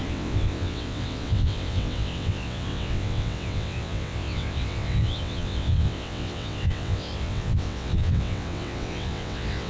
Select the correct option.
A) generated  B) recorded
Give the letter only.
A